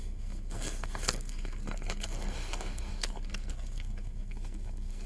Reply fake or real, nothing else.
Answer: fake